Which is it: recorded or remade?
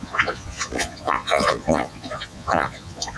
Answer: remade